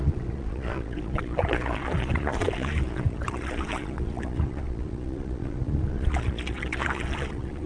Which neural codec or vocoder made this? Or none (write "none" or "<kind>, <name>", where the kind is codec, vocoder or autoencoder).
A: vocoder, Vocos